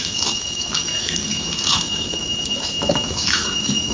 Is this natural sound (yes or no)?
no